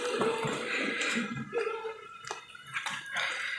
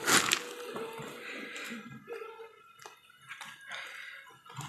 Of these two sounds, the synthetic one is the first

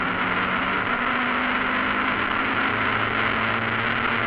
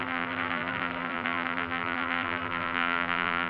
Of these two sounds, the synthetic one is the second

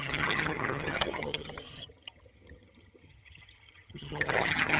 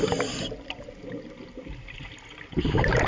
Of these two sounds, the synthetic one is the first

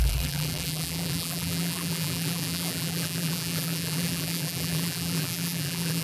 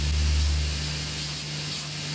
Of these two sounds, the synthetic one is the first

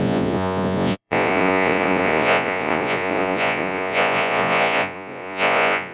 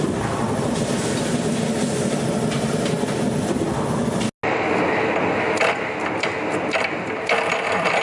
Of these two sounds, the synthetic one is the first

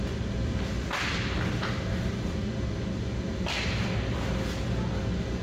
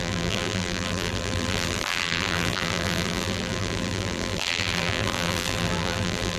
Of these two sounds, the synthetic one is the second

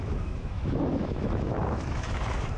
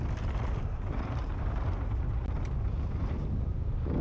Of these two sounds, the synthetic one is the first